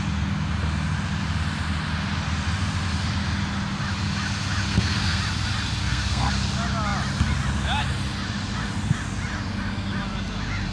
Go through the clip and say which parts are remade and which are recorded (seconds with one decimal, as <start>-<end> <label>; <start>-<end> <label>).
0.0-4.7 recorded; 4.7-5.2 remade; 5.2-5.8 recorded; 5.8-6.3 remade; 6.3-10.7 recorded